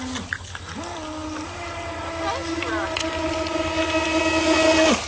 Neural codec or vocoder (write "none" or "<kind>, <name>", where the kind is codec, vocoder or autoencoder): none